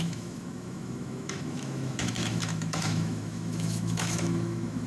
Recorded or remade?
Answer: remade